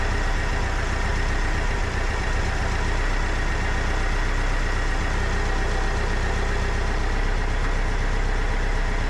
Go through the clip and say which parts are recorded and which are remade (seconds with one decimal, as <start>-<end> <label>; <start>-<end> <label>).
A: 0.0-1.1 recorded; 1.1-2.4 remade; 2.4-9.1 recorded

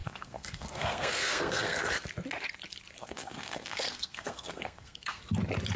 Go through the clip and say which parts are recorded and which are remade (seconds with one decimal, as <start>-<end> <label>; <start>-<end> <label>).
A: 0.0-1.8 remade; 1.8-3.0 recorded; 3.0-5.2 remade; 5.2-5.8 recorded